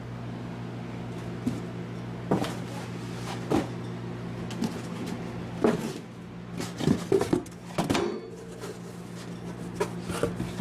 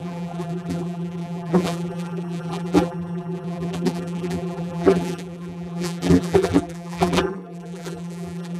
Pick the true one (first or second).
first